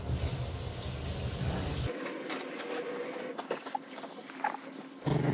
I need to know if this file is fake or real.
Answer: real